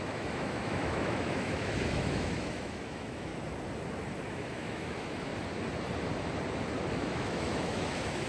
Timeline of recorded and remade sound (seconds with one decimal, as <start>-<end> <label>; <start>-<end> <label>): 0.0-3.3 remade; 3.3-4.3 recorded; 4.3-5.3 remade; 5.3-6.9 recorded; 6.9-8.3 remade